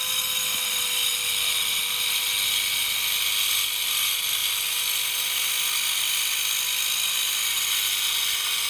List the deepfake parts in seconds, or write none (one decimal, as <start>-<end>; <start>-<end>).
none